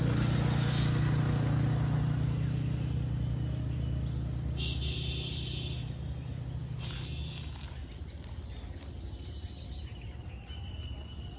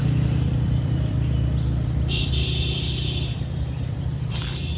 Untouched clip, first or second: first